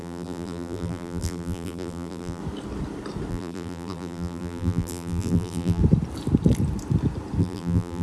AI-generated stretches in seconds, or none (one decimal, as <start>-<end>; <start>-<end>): 0.0-2.4; 3.3-5.8; 7.4-8.0